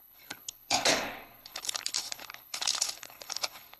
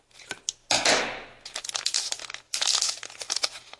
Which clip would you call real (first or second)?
second